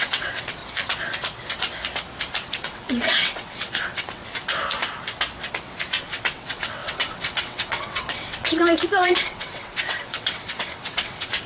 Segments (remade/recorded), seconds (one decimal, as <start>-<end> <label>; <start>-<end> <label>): 0.0-0.6 remade; 0.6-2.4 recorded; 2.4-4.2 remade; 4.2-6.0 recorded; 6.0-11.5 remade